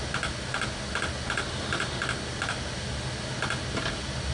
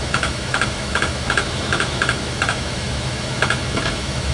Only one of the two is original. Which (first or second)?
first